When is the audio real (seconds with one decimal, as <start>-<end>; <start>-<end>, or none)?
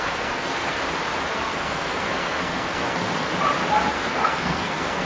0.8-1.3; 3.3-3.9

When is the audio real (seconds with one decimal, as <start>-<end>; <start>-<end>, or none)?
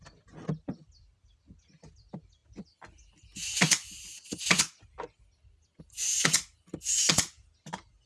0.0-8.1